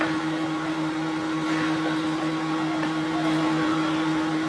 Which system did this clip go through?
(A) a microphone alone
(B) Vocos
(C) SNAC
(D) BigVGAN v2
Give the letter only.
A